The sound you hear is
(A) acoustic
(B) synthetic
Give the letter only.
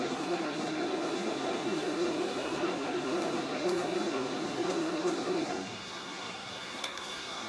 B